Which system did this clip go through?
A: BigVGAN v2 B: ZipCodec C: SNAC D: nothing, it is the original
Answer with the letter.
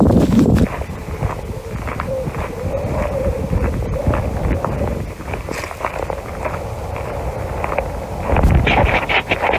D